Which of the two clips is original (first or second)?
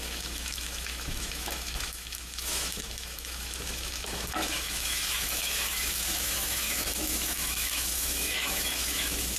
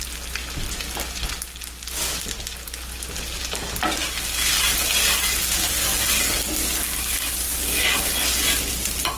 second